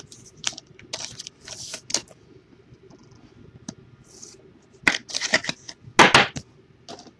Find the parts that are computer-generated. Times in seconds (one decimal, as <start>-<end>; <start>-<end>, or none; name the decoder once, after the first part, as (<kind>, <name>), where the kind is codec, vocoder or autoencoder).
none